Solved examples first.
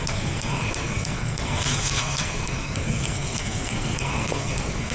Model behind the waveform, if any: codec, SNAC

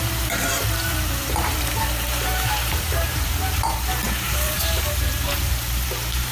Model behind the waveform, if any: vocoder, BigVGAN v2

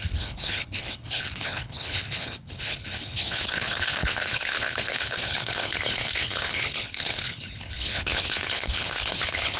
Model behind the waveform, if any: codec, HILCodec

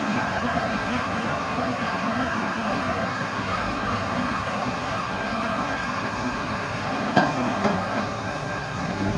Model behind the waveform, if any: codec, SNAC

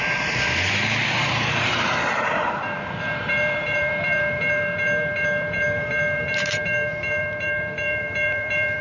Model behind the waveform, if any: vocoder, BigVGAN v2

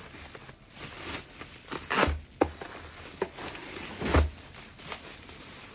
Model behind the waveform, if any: none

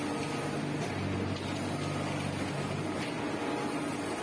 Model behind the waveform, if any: none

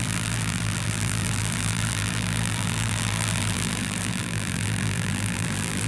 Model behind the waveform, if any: vocoder, BigVGAN v2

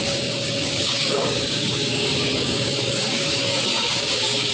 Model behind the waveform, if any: codec, DAC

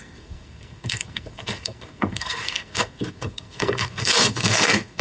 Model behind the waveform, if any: codec, SNAC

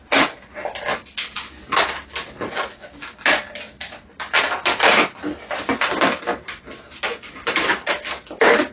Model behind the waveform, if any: none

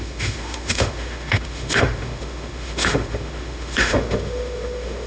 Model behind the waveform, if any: autoencoder, DAC-VAE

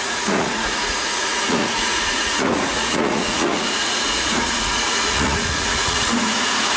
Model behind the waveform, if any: vocoder, Vocos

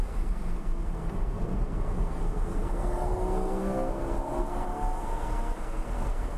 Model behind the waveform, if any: codec, SNAC